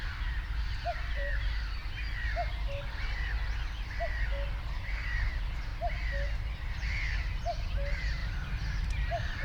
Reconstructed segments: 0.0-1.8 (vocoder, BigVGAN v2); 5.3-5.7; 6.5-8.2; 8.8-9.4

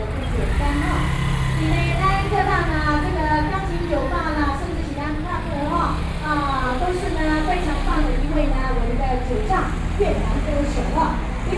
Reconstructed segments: none

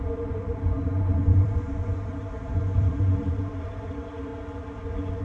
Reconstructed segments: 0.0-4.3 (vocoder, BigVGAN v2)